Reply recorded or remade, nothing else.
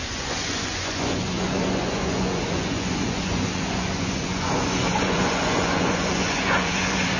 remade